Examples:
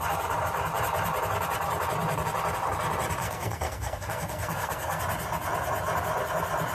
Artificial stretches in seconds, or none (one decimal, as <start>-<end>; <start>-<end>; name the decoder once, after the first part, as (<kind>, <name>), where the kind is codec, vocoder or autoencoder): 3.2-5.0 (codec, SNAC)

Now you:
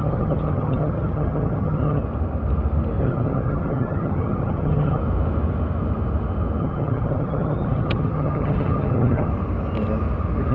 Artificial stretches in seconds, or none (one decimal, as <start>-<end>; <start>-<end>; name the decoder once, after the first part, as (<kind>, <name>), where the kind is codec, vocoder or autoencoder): 0.0-2.0 (vocoder, HiFi-GAN); 3.0-5.0; 6.6-9.3

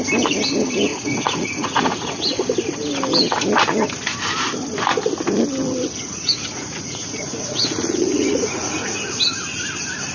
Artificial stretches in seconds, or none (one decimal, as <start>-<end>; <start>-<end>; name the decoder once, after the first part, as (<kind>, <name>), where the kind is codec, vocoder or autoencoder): 0.9-2.2 (vocoder, Vocos); 6.0-9.0

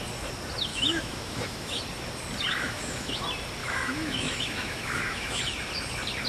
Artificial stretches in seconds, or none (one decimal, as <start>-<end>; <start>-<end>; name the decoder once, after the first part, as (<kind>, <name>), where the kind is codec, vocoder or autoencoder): 0.7-1.8 (autoencoder, DAC-VAE); 2.5-3.2; 3.6-5.4